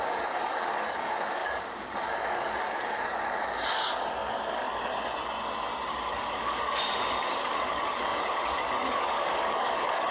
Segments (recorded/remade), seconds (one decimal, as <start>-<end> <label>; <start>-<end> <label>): 0.0-4.9 remade; 4.9-5.9 recorded; 5.9-10.1 remade